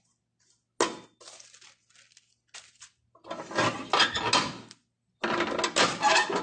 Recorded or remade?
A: recorded